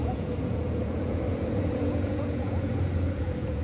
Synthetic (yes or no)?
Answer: yes